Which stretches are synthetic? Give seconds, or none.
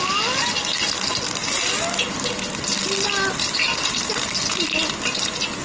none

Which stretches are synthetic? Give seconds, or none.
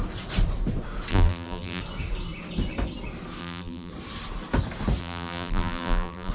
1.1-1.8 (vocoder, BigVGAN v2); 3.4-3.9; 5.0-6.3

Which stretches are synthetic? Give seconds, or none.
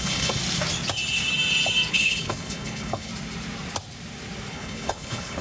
0.0-0.4 (codec, HILCodec); 1.9-3.1; 4.5-5.4